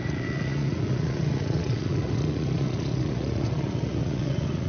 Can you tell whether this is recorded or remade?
remade